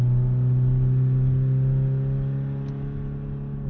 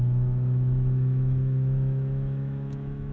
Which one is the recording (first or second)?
first